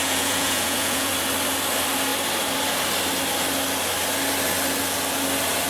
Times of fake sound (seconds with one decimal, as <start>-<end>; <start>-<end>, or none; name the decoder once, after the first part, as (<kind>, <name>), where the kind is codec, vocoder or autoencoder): 0.0-1.1 (vocoder, Vocos)

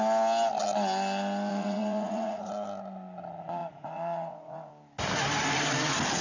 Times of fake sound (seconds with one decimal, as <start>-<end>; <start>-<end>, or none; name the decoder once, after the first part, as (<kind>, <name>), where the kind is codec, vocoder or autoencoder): 1.5-2.5 (vocoder, Vocos); 3.6-4.7

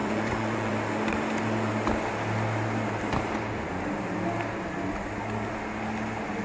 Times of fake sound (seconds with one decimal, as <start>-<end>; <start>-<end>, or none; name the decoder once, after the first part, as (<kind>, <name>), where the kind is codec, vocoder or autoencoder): 0.0-0.7 (vocoder, Vocos)

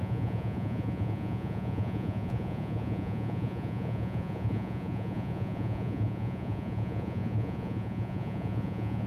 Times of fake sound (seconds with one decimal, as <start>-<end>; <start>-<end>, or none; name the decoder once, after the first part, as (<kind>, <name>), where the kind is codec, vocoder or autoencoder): 0.0-9.1 (vocoder, Vocos)

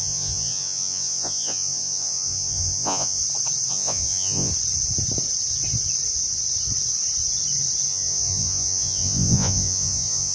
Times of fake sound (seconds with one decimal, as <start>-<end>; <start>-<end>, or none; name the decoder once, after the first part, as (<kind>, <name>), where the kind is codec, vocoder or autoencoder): 0.0-3.2 (vocoder, Vocos); 3.7-4.5; 7.9-10.3

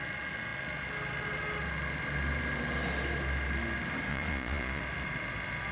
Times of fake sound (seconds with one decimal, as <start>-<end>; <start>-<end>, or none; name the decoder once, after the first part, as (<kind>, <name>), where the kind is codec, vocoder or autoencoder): 4.1-4.8 (vocoder, Vocos)

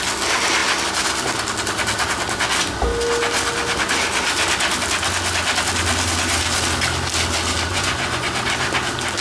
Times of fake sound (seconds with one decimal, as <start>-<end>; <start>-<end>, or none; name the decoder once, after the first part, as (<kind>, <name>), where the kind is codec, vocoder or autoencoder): 7.7-8.3 (vocoder, Vocos)